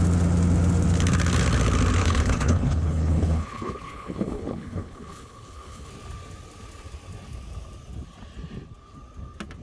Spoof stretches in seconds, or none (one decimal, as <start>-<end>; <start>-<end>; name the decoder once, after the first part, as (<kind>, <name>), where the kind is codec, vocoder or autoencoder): 2.0-5.9 (codec, HILCodec)